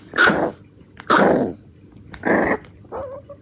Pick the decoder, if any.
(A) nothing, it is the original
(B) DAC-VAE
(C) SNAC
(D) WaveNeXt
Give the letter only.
A